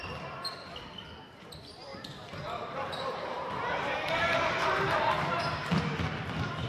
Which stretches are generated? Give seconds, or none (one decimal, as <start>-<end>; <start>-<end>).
1.9-5.7